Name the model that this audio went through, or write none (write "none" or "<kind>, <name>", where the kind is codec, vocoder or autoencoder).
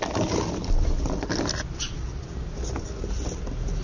none